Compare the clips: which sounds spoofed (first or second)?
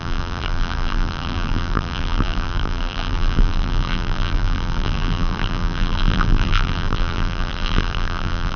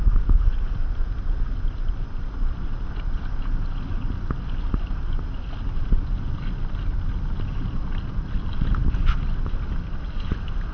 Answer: first